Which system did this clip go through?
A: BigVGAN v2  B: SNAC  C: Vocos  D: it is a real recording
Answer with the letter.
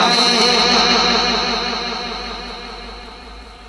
A